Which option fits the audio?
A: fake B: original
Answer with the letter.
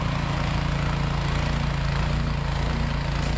B